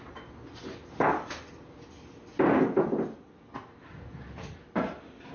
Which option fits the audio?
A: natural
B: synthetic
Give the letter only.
A